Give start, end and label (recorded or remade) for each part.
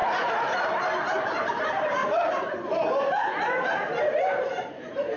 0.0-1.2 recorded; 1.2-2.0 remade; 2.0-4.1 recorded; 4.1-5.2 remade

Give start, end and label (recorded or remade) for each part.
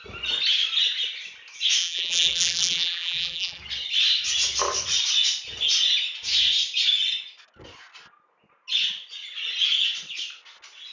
0.0-1.8 recorded; 1.8-3.6 remade; 3.6-10.9 recorded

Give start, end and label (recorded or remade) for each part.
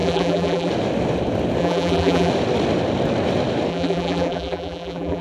0.0-0.7 remade; 0.7-1.6 recorded; 1.6-2.3 remade; 2.3-3.7 recorded; 3.7-5.2 remade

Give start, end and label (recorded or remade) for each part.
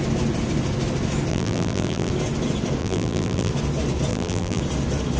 0.0-1.3 recorded; 1.3-2.1 remade; 2.1-2.8 recorded; 2.8-3.5 remade; 3.5-4.1 recorded; 4.1-4.6 remade; 4.6-5.2 recorded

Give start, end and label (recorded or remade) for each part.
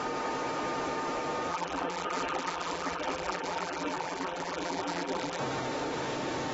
0.0-1.5 recorded; 1.5-5.4 remade; 5.4-6.5 recorded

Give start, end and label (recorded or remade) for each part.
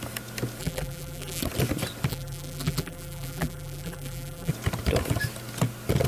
0.0-0.6 recorded; 0.6-1.4 remade; 1.4-2.1 recorded; 2.1-4.5 remade; 4.5-6.1 recorded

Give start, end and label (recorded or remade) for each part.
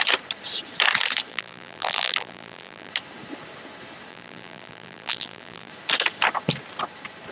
0.0-1.3 recorded; 1.3-2.9 remade; 2.9-4.1 recorded; 4.1-5.7 remade; 5.7-7.3 recorded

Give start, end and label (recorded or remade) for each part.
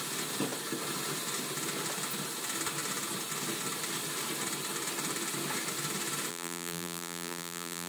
0.0-6.3 recorded; 6.3-7.9 remade